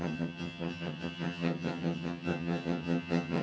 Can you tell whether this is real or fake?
fake